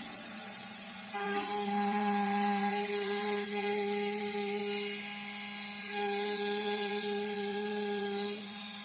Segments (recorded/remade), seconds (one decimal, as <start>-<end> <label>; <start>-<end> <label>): 0.0-4.6 remade; 4.6-5.8 recorded; 5.8-8.8 remade